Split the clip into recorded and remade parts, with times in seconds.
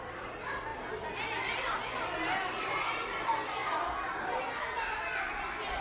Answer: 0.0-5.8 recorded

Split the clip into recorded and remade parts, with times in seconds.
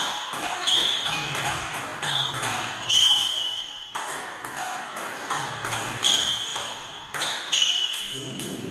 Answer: 0.0-8.7 remade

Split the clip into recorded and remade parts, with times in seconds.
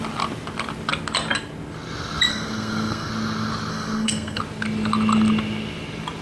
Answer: 0.0-2.3 recorded; 2.3-3.1 remade; 3.1-3.7 recorded; 3.7-4.4 remade; 4.4-6.2 recorded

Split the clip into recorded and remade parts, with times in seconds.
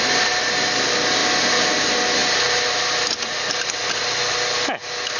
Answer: 0.0-5.2 recorded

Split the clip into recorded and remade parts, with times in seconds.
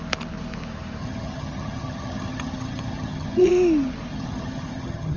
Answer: 0.0-1.0 recorded; 1.0-3.5 remade; 3.5-4.1 recorded; 4.1-5.2 remade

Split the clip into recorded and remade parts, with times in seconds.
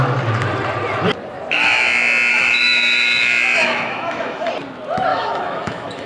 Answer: 0.0-2.3 recorded; 2.3-4.5 remade; 4.5-5.1 recorded; 5.1-6.1 remade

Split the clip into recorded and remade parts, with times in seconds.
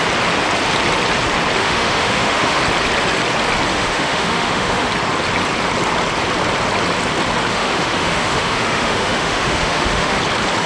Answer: 0.0-1.6 recorded; 1.6-2.6 remade; 2.6-3.7 recorded; 3.7-4.9 remade; 4.9-7.5 recorded; 7.5-10.2 remade; 10.2-10.7 recorded